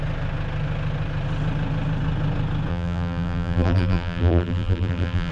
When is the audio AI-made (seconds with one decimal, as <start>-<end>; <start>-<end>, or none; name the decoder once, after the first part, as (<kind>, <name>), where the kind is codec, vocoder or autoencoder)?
2.7-5.3 (vocoder, BigVGAN v2)